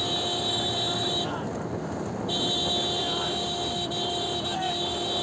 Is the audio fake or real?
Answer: real